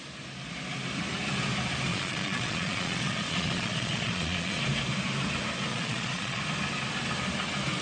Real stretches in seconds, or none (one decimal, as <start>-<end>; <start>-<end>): 0.0-1.9; 4.6-5.7; 6.4-7.8